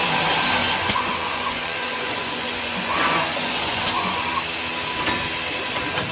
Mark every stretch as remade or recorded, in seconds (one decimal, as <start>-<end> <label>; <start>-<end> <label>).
0.0-0.6 recorded; 0.6-4.3 remade; 4.3-6.1 recorded